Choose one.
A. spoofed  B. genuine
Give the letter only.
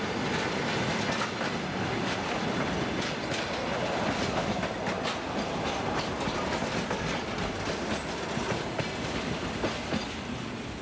B